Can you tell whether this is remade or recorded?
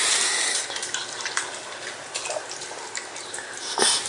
recorded